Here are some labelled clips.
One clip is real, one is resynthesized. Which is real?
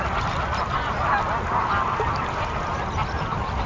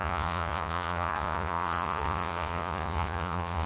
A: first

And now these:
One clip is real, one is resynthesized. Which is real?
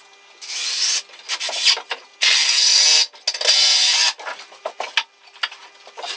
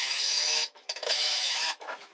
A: first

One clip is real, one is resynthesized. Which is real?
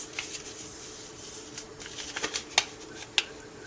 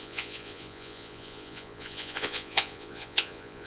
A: first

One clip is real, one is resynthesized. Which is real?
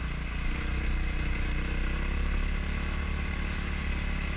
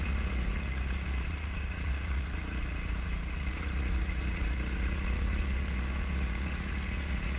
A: first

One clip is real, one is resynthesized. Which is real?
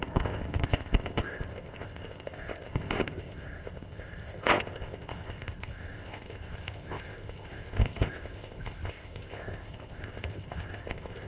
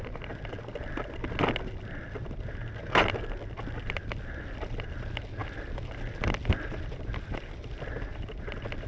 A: second